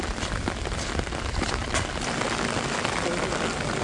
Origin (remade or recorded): recorded